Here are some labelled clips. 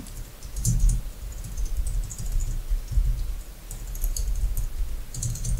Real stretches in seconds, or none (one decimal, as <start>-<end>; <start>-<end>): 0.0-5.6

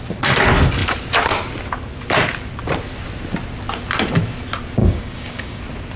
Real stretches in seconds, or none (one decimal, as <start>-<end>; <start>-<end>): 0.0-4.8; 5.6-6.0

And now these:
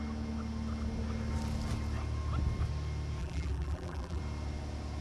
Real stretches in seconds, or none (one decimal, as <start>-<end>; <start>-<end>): 0.0-3.2; 4.2-5.0

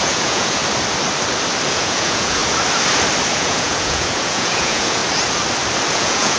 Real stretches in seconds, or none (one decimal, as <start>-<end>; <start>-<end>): 0.6-1.7; 2.4-3.3; 5.0-5.9

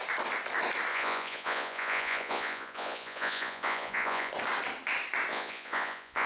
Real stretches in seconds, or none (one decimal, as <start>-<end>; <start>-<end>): 0.0-0.9; 4.3-5.3